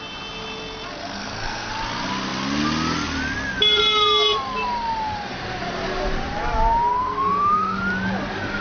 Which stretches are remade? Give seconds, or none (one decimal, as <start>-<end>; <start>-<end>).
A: 1.0-1.7; 6.9-7.8